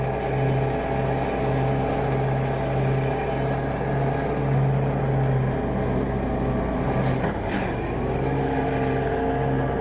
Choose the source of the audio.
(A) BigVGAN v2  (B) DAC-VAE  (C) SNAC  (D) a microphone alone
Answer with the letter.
D